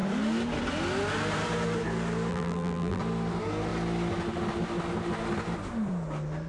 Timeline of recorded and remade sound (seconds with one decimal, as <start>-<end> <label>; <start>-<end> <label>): 0.0-2.3 recorded; 2.3-3.0 remade; 3.0-6.5 recorded